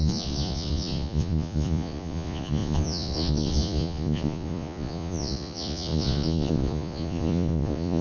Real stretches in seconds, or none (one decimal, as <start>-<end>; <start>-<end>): none